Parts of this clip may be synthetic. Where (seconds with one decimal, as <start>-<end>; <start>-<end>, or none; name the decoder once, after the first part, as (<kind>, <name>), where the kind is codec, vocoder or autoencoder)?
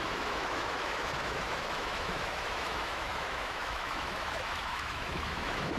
0.0-5.8 (autoencoder, DAC-VAE)